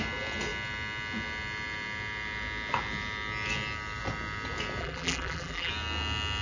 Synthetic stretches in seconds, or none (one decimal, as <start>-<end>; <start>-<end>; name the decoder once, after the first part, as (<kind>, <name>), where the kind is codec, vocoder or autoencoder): 4.8-5.7 (vocoder, BigVGAN v2)